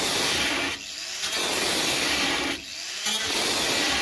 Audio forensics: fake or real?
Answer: real